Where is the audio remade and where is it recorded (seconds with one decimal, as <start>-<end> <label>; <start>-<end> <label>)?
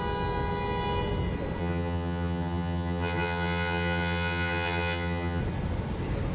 0.0-1.6 recorded; 1.6-5.4 remade; 5.4-6.3 recorded